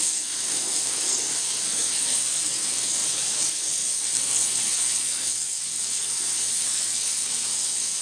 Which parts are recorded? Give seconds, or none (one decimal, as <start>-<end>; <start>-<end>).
none